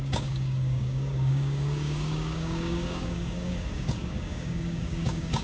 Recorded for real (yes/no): no